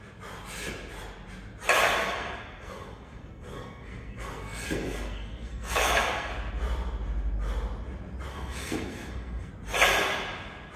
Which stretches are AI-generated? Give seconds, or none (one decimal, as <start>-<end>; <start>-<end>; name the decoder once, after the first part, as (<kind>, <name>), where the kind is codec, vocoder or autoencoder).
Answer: 2.0-6.3 (codec, SNAC); 8.3-9.5